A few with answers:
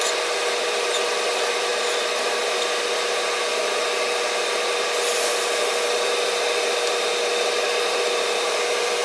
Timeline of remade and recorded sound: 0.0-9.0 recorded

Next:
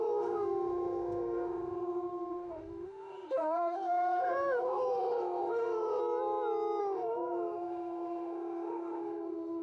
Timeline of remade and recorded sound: 0.0-6.0 remade; 6.0-6.8 recorded; 6.8-9.6 remade

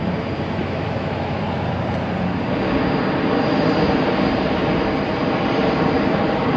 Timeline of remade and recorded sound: 0.0-0.6 recorded; 0.6-1.4 remade; 1.4-6.6 recorded

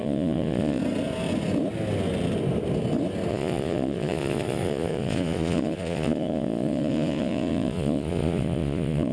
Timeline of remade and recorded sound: 0.0-0.8 remade; 0.8-3.3 recorded; 3.3-9.1 remade

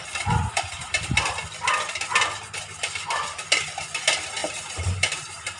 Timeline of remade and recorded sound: 0.0-4.4 recorded; 4.4-5.6 remade

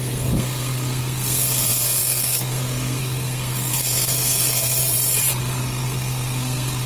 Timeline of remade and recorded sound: 0.0-4.8 remade; 4.8-5.4 recorded; 5.4-6.9 remade

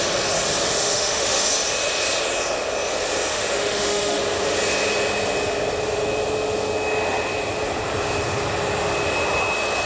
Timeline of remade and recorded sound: 0.0-0.6 recorded; 0.6-1.5 remade; 1.5-3.3 recorded; 3.3-4.2 remade; 4.2-9.9 recorded